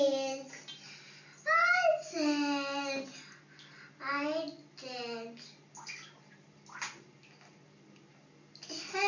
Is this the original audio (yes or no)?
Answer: yes